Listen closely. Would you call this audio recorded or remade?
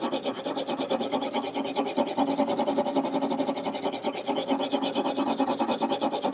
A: recorded